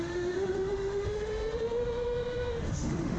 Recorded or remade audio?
remade